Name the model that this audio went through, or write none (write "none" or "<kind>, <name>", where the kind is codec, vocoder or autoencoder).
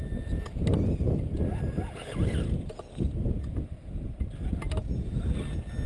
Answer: none